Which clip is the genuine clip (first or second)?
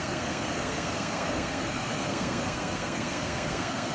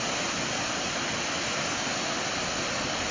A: second